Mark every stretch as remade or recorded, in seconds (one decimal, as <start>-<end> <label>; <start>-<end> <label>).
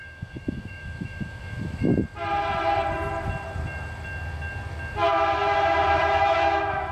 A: 0.0-1.9 remade; 1.9-6.0 recorded; 6.0-6.9 remade